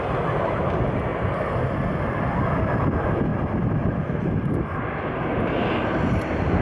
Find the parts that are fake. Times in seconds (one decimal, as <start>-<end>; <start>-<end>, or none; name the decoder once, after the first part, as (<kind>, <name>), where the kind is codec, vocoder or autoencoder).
none